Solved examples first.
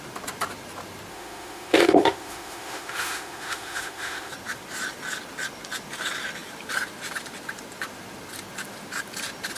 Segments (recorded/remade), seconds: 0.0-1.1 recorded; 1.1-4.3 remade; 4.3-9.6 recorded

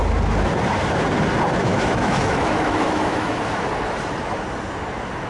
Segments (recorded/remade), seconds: 0.0-1.6 recorded; 1.6-3.4 remade; 3.4-5.3 recorded